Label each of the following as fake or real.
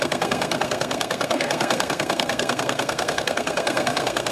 fake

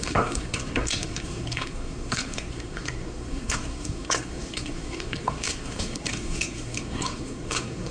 fake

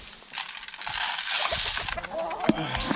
real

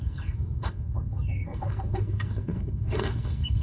fake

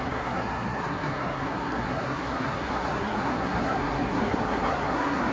fake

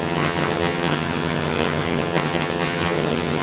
fake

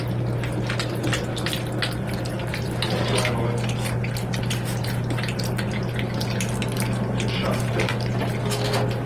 real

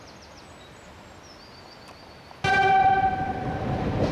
real